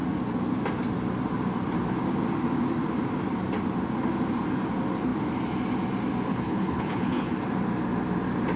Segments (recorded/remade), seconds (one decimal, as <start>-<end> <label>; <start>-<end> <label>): 0.0-6.3 recorded; 6.3-7.3 remade; 7.3-8.6 recorded